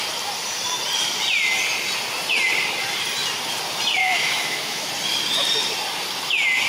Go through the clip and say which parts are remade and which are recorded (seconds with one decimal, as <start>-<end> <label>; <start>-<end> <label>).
0.0-4.0 recorded; 4.0-4.9 remade; 4.9-6.7 recorded